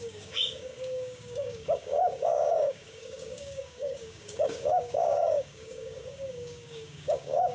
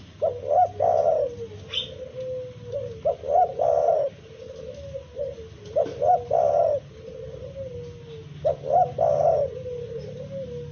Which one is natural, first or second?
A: second